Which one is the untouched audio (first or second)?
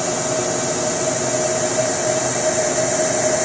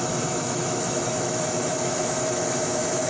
first